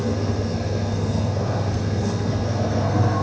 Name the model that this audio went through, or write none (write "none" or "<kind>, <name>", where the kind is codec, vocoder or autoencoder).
codec, SNAC